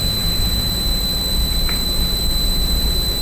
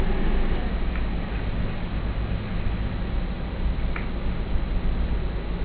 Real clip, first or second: second